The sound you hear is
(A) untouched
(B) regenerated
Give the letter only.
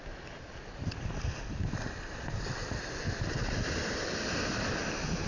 A